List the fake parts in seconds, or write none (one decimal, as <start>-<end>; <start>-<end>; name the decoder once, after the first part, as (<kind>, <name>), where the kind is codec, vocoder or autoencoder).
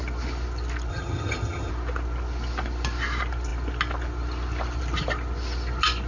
0.9-1.7 (vocoder, HiFi-GAN)